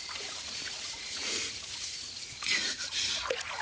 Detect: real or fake fake